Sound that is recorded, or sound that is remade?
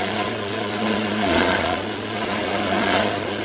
remade